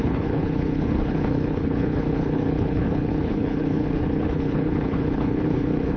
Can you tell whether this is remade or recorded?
remade